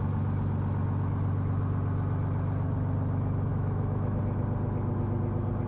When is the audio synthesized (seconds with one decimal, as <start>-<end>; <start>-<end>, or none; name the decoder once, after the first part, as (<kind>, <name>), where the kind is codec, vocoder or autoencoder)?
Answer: 3.5-4.2 (autoencoder, DAC-VAE)